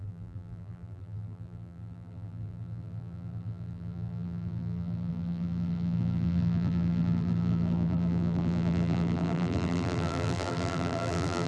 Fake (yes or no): yes